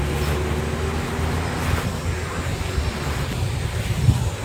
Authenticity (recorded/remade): recorded